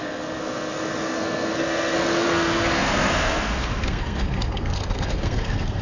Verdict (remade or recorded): remade